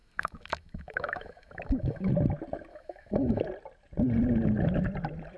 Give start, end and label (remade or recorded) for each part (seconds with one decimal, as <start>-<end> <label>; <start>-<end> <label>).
0.0-2.1 remade; 2.1-2.7 recorded; 2.7-3.4 remade; 3.4-5.4 recorded